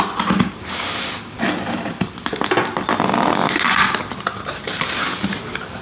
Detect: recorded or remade recorded